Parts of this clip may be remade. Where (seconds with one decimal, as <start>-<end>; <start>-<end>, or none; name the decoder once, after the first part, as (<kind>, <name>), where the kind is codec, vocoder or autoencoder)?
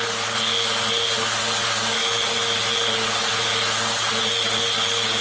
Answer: none